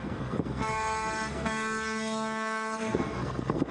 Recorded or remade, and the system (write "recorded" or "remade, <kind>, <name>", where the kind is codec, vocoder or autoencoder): remade, codec, SNAC